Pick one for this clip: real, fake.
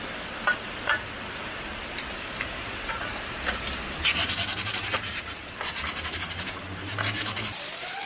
fake